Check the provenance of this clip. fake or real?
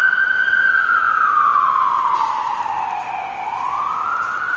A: real